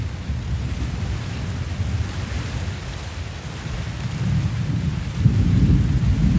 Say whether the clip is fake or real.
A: real